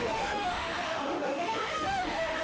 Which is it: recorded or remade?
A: remade